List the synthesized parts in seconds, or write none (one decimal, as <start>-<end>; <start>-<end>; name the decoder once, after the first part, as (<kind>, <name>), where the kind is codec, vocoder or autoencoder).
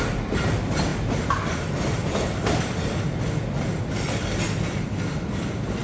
none